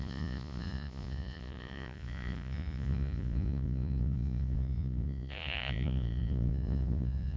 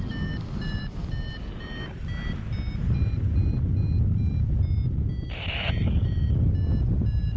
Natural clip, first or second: second